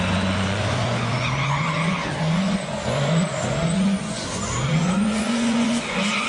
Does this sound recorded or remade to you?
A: remade